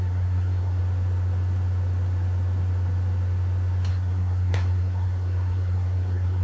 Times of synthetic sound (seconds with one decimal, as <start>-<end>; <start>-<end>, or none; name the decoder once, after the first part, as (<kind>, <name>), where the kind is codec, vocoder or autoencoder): 0.0-0.8 (codec, SNAC); 3.9-6.4